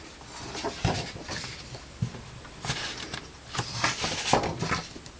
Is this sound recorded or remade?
recorded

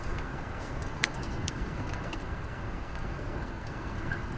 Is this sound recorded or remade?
remade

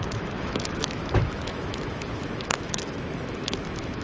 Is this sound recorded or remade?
remade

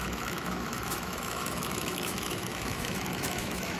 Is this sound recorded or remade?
remade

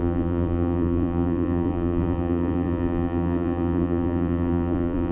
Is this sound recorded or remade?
remade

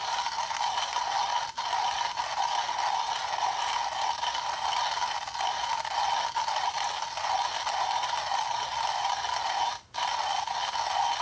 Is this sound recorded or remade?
recorded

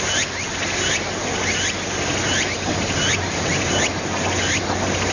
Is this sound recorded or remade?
recorded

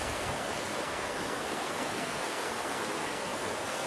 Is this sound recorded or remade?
remade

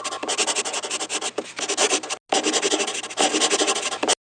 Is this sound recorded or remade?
recorded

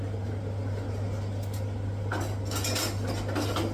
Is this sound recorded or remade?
recorded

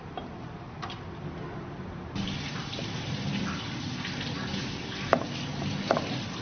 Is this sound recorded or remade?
recorded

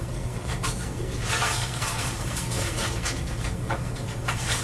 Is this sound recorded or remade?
remade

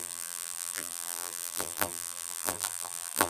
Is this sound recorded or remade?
remade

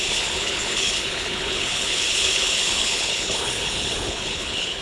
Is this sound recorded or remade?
remade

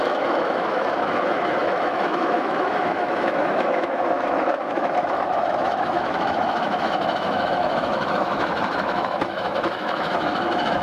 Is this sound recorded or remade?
remade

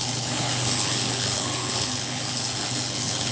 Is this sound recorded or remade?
remade